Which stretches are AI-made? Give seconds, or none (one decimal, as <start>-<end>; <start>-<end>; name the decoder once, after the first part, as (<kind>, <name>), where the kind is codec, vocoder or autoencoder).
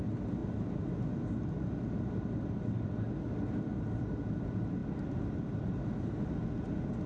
none